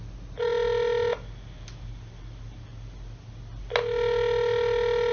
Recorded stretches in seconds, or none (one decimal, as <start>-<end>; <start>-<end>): 0.0-5.1